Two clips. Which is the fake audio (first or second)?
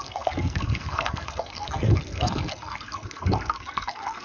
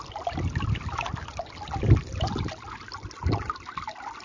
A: first